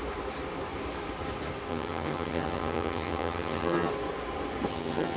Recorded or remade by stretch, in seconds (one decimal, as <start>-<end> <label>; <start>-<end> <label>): 0.0-1.7 recorded; 1.7-3.9 remade; 3.9-4.7 recorded; 4.7-5.2 remade